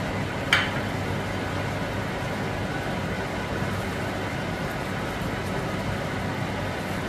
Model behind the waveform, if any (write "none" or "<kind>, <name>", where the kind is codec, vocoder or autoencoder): none